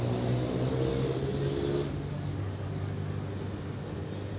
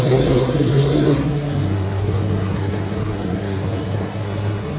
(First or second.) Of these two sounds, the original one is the first